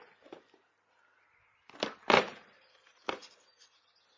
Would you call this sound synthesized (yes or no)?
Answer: no